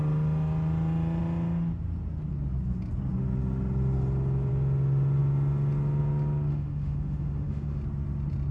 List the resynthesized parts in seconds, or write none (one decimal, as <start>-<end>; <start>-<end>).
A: 6.5-7.8